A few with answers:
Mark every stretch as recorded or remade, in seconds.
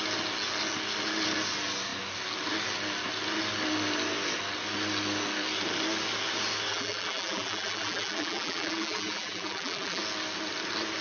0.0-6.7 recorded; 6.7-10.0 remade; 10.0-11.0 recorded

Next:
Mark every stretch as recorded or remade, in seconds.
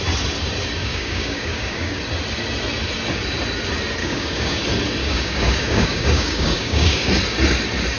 0.0-0.8 recorded; 0.8-2.0 remade; 2.0-4.0 recorded; 4.0-4.6 remade; 4.6-5.0 recorded; 5.0-7.1 remade; 7.1-8.0 recorded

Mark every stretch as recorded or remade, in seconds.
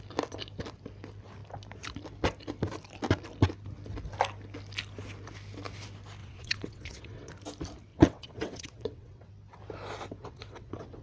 0.0-6.2 recorded; 6.2-7.3 remade; 7.3-7.9 recorded; 7.9-9.3 remade; 9.3-10.2 recorded; 10.2-11.0 remade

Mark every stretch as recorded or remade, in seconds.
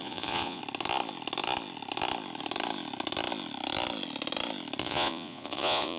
0.0-0.6 remade; 0.6-4.8 recorded; 4.8-6.0 remade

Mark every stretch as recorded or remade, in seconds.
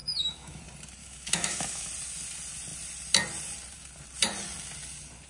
0.0-0.6 remade; 0.6-1.0 recorded; 1.0-1.9 remade; 1.9-5.3 recorded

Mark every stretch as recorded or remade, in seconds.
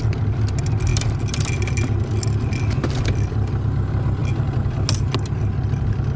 0.0-6.2 recorded